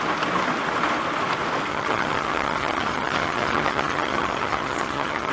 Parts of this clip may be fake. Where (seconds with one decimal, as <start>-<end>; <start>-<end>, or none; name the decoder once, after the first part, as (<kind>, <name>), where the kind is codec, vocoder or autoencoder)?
1.7-5.3 (vocoder, HiFi-GAN)